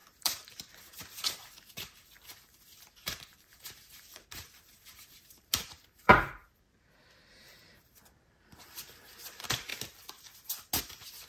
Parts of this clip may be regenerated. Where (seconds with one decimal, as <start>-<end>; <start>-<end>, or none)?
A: 0.0-6.1; 7.3-9.7; 10.8-11.3